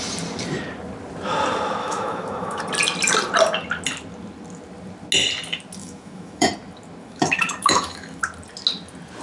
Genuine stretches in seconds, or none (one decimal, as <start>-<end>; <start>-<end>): 0.0-1.8; 2.6-5.8; 6.5-7.0; 8.2-9.2